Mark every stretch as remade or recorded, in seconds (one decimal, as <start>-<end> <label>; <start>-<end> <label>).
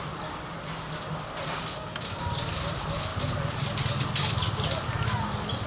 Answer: 0.0-1.7 recorded; 1.7-2.2 remade; 2.2-5.7 recorded